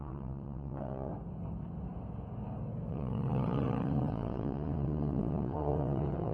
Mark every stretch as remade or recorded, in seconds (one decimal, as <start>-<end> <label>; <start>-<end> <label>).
0.0-1.1 remade; 1.1-2.9 recorded; 2.9-6.3 remade